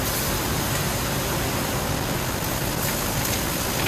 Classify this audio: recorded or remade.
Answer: recorded